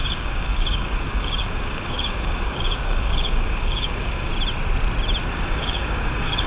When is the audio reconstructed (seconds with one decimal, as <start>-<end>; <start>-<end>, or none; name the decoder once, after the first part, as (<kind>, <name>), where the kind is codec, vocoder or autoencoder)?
0.0-4.3 (codec, DAC); 5.3-6.5